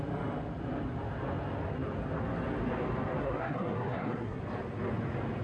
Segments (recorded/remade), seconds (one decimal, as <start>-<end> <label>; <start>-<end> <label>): 0.0-3.2 recorded; 3.2-4.4 remade; 4.4-5.4 recorded